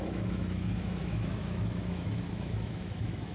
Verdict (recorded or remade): remade